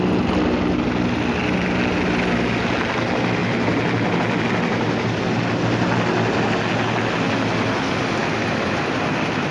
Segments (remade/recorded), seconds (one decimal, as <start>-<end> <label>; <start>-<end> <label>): 0.0-9.5 recorded